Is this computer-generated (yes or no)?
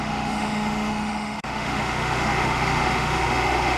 yes